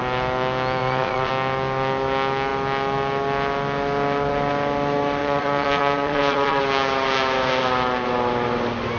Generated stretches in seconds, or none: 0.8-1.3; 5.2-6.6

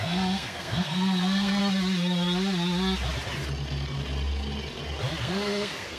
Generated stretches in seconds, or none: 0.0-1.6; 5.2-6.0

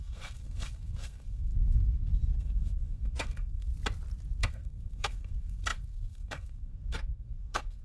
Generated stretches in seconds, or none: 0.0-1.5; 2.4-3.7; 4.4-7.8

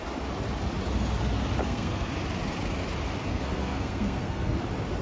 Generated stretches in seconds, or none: 1.6-2.1; 3.3-4.6